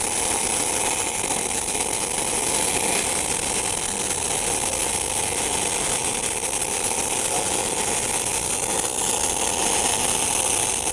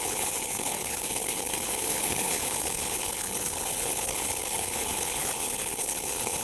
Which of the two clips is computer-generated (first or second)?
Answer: second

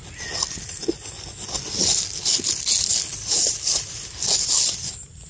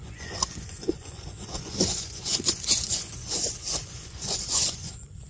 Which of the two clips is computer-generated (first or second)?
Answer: second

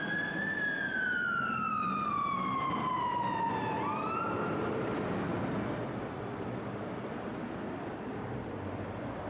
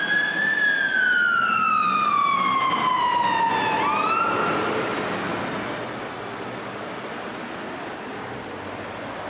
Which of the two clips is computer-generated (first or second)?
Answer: first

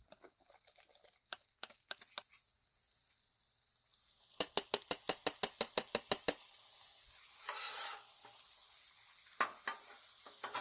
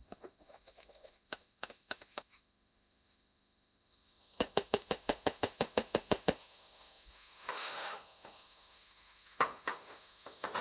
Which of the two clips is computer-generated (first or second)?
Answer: second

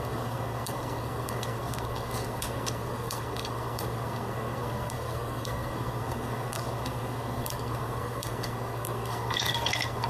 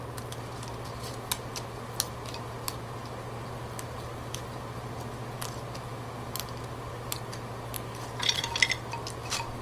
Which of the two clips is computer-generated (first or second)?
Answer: first